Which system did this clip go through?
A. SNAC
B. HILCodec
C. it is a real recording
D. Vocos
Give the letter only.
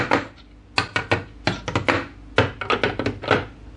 C